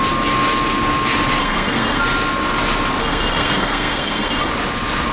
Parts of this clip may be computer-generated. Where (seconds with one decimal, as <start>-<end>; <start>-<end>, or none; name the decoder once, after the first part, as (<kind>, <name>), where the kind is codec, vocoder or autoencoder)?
1.4-2.0 (codec, SNAC); 3.0-4.5